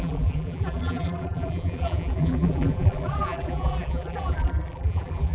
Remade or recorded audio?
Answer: remade